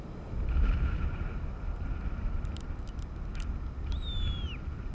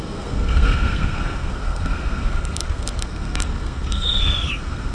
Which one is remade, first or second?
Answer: second